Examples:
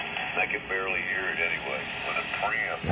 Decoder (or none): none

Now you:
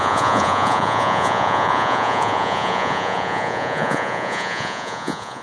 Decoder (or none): vocoder, Vocos